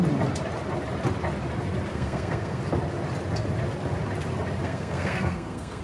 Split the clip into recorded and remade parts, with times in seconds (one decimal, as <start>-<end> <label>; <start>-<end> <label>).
0.0-1.9 recorded; 1.9-2.6 remade; 2.6-4.6 recorded; 4.6-5.8 remade